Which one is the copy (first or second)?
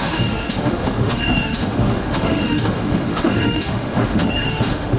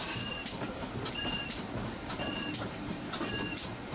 first